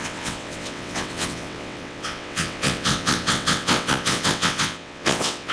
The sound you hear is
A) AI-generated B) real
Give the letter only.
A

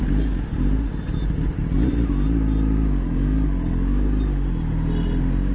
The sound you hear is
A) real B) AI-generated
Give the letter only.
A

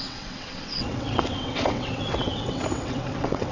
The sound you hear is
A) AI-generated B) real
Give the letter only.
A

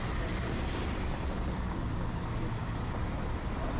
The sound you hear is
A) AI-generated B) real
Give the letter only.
B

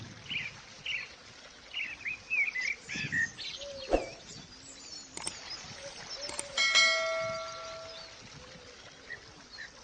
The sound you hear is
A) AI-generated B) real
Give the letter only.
B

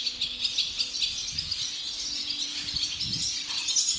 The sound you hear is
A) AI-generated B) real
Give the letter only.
B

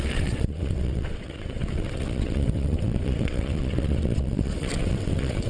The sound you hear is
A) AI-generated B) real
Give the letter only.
A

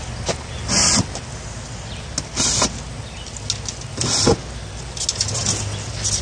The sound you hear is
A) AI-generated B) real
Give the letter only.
B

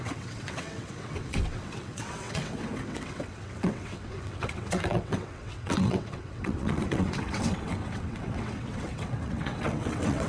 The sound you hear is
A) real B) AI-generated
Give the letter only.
B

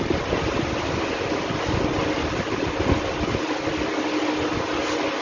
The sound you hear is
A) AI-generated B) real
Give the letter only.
B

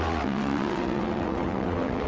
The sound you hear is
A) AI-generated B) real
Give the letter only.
A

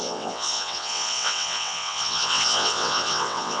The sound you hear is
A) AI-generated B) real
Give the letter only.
A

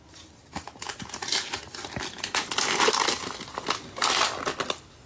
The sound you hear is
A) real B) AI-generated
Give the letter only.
A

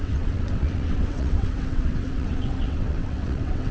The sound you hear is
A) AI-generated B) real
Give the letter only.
A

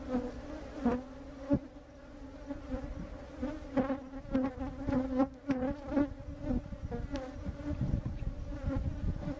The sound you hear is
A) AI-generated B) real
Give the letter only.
B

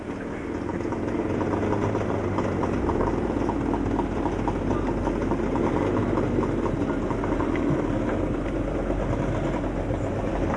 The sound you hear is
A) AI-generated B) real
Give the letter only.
B